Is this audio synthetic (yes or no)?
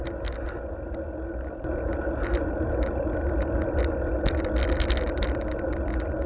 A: no